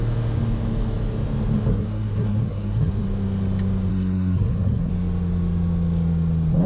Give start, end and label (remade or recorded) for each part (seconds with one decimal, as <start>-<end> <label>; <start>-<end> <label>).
0.0-1.7 recorded; 1.7-2.9 remade; 2.9-3.9 recorded; 3.9-4.9 remade; 4.9-6.7 recorded